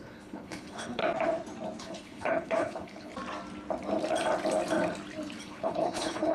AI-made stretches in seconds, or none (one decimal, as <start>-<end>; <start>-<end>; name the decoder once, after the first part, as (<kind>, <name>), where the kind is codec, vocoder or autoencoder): 0.0-1.0 (codec, HILCodec); 1.8-3.1; 5.4-6.3